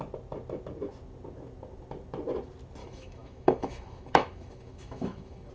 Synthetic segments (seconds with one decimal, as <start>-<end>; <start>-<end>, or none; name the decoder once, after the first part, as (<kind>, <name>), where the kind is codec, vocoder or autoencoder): 2.8-5.5 (autoencoder, DAC-VAE)